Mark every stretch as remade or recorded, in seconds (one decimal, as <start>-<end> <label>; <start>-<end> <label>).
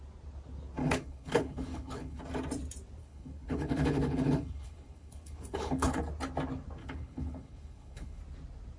0.0-0.8 recorded; 0.8-2.2 remade; 2.2-3.0 recorded; 3.0-6.0 remade; 6.0-6.8 recorded; 6.8-8.2 remade; 8.2-8.8 recorded